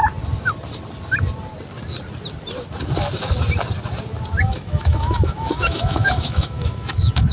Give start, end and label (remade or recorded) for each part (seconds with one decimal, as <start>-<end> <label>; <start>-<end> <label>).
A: 0.0-4.4 recorded; 4.4-7.3 remade